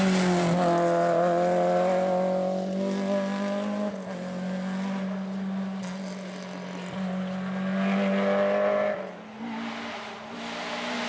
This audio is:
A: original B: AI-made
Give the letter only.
A